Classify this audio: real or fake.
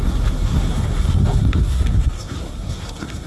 fake